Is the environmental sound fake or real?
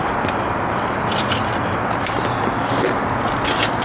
real